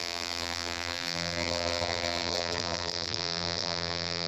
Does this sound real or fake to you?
fake